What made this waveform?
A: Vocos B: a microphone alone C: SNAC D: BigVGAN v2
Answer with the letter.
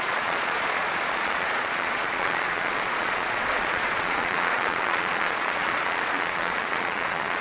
A